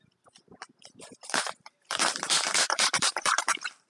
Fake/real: fake